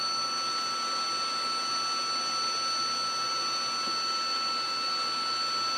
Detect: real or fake real